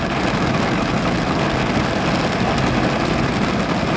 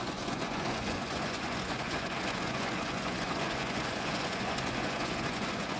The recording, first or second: first